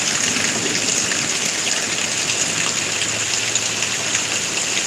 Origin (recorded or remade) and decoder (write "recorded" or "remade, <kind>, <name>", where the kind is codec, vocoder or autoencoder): recorded